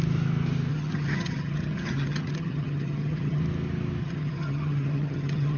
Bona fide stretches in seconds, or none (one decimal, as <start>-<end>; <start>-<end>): 0.0-0.7; 3.4-4.0